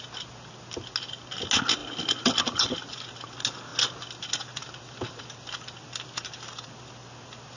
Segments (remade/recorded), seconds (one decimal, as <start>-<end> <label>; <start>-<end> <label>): 0.0-7.6 recorded